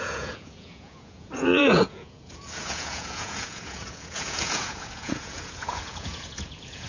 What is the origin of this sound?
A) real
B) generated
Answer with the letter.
B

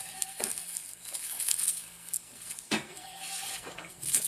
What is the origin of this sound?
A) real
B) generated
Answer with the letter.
B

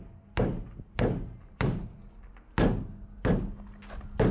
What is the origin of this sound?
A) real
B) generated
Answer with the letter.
A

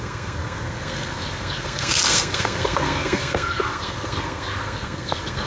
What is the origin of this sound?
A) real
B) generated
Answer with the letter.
B